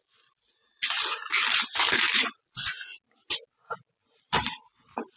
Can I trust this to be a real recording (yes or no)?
yes